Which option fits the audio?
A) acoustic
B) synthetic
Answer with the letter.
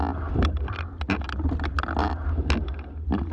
A